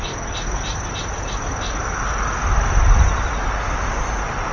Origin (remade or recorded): recorded